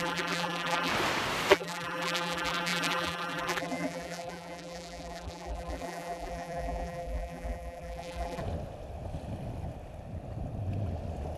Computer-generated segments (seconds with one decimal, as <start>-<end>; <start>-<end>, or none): 0.0-0.9; 1.5-8.4